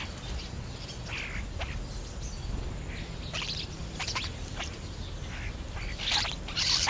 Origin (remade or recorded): recorded